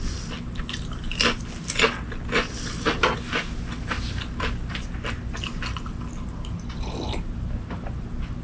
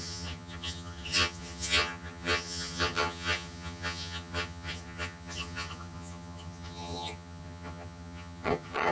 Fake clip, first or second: second